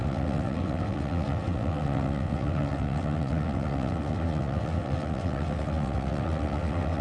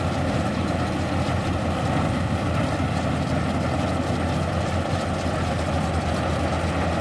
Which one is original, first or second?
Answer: second